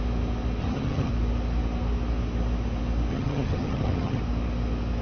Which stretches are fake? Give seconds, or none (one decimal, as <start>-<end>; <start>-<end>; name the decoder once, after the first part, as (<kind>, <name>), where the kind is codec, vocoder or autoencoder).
0.6-1.1 (vocoder, HiFi-GAN); 3.1-4.2

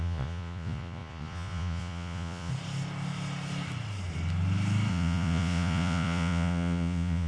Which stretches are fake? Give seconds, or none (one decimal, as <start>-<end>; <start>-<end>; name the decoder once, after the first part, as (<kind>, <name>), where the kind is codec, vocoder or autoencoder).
0.0-2.5 (vocoder, Vocos); 4.9-7.3

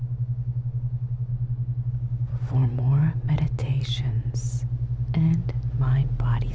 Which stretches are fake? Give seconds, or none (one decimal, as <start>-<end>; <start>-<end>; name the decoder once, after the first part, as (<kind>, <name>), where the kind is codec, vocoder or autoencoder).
0.0-1.3 (codec, DAC); 1.9-2.3

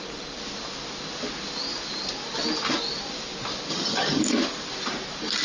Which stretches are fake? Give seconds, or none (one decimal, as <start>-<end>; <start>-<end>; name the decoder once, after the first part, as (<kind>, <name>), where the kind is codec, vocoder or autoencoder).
3.7-4.2 (vocoder, HiFi-GAN)

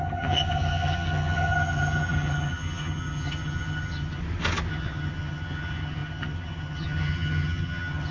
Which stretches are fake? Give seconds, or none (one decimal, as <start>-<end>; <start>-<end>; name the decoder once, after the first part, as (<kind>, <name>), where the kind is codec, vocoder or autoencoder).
0.0-4.2 (vocoder, HiFi-GAN); 4.7-8.1

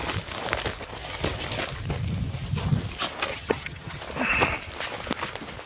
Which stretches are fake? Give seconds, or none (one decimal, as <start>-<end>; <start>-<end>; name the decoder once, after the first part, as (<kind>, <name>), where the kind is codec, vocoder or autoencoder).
3.3-4.0 (vocoder, HiFi-GAN)

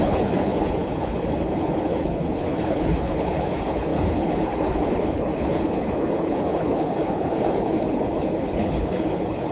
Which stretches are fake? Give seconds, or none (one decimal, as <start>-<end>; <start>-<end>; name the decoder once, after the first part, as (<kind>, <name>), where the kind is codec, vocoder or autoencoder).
0.0-9.5 (codec, HILCodec)

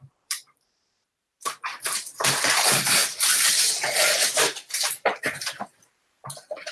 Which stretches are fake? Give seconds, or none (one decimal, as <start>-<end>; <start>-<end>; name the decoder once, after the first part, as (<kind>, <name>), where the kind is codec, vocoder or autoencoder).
0.0-6.7 (vocoder, BigVGAN v2)